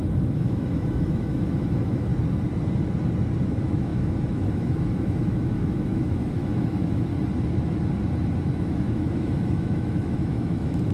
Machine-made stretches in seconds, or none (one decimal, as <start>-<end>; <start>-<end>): 0.0-2.1; 3.4-7.1; 8.4-10.9

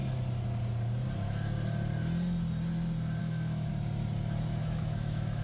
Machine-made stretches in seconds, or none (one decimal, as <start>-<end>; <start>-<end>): 3.2-3.7; 4.6-5.4

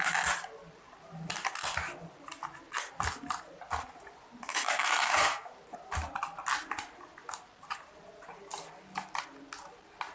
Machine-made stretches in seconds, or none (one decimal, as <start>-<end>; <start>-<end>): 4.5-5.5

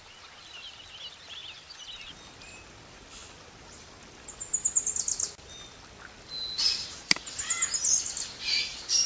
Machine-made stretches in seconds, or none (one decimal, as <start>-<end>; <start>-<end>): none

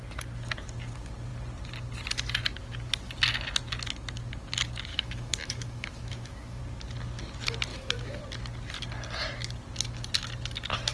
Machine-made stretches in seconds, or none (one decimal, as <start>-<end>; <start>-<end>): 4.9-6.6; 7.7-8.2